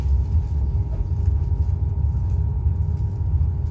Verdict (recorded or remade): recorded